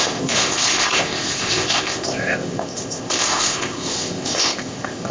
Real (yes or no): no